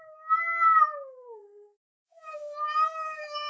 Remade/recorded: remade